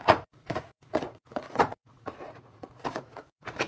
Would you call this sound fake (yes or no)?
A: yes